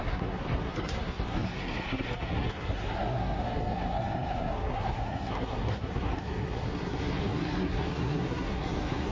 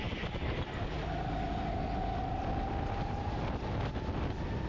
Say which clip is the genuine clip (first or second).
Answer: second